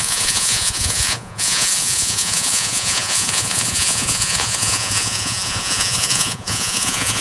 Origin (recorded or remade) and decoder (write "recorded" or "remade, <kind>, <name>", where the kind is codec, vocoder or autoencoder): remade, vocoder, Vocos